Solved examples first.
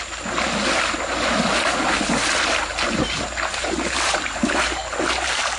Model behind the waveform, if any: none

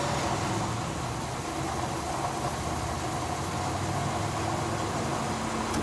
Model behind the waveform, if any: none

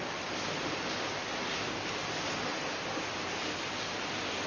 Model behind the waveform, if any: none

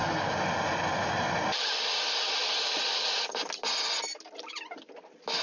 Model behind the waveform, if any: none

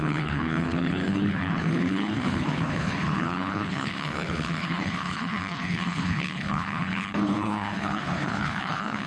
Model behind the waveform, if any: codec, HILCodec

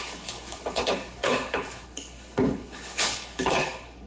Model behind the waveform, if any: codec, HILCodec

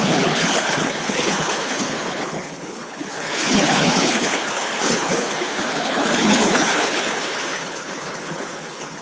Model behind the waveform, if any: codec, HILCodec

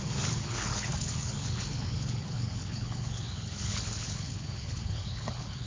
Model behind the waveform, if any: codec, HILCodec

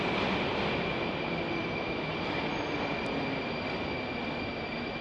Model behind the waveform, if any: none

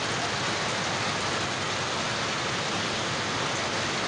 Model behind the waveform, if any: none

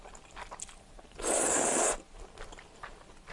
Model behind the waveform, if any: none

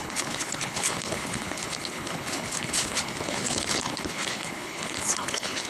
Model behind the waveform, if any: codec, HILCodec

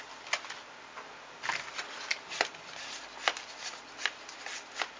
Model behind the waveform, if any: none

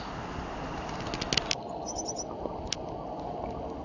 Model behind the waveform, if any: none